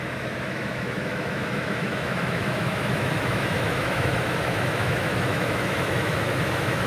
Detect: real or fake fake